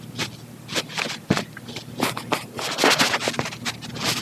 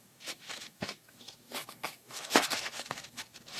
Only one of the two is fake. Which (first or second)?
second